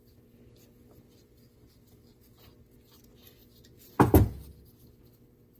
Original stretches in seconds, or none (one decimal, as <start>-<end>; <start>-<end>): 0.0-5.6